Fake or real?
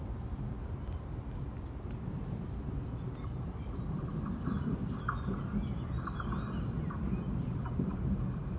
real